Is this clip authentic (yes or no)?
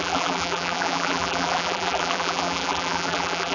no